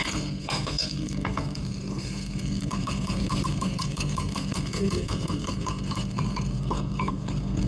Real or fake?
fake